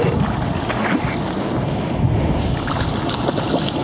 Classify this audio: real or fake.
real